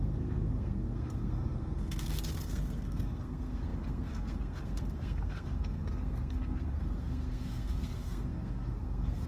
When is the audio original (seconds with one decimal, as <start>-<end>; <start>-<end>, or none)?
none